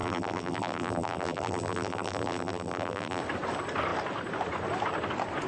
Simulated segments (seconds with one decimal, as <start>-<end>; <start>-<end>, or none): 0.0-3.2

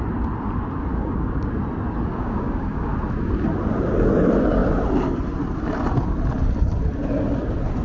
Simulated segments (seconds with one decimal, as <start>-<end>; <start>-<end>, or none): 0.9-1.5; 2.1-2.9

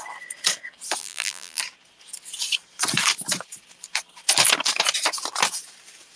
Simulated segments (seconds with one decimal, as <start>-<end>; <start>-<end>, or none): 1.0-1.6